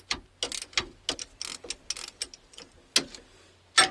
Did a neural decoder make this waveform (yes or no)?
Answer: no